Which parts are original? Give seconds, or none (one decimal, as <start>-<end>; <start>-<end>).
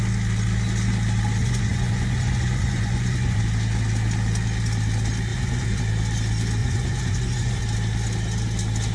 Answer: 0.0-1.4; 3.4-5.3; 5.8-6.6; 7.6-8.9